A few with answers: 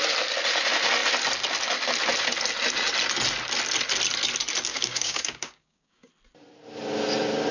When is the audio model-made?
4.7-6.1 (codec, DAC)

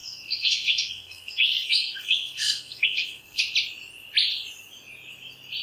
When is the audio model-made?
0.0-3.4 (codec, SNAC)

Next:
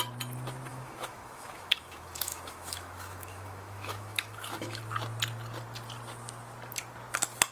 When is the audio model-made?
0.7-4.8 (autoencoder, DAC-VAE)

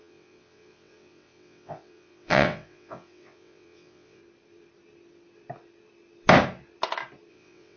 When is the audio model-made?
0.0-4.2 (vocoder, WaveNeXt); 7.3-7.8

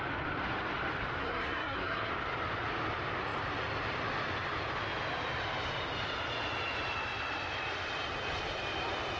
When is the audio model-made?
1.2-2.1 (codec, SNAC)

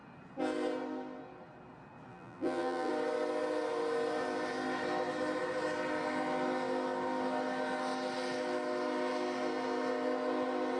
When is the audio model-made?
2.1-2.9 (vocoder, BigVGAN v2)

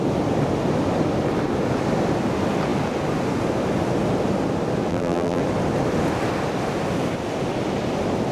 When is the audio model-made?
4.9-5.4 (vocoder, BigVGAN v2)

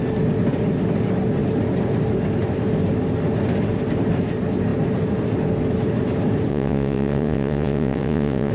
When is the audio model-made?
6.5-8.5 (vocoder, WaveNeXt)